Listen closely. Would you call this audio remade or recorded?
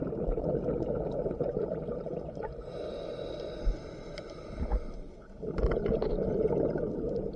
recorded